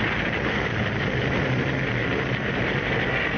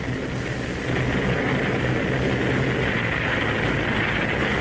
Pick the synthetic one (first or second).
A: first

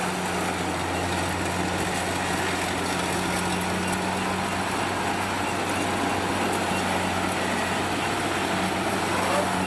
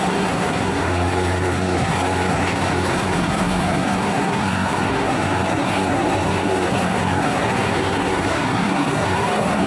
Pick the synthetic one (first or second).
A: second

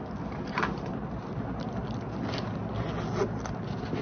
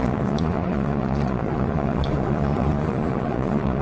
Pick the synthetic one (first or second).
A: second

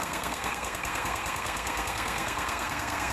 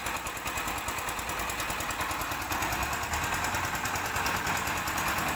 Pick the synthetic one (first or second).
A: first